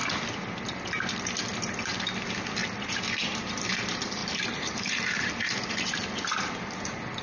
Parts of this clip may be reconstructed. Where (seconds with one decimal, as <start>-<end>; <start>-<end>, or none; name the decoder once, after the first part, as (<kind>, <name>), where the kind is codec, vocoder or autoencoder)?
4.2-5.5 (vocoder, BigVGAN v2)

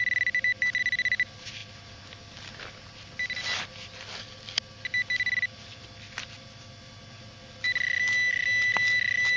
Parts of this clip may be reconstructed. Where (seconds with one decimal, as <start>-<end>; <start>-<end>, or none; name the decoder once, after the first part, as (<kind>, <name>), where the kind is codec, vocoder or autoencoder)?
none

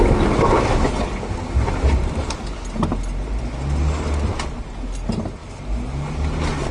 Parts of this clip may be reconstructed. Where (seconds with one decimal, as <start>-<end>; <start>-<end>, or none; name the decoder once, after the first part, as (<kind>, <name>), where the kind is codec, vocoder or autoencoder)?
none